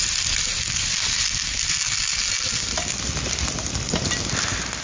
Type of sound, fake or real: real